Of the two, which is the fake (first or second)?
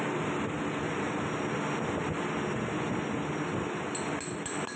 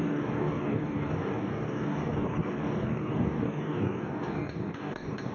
second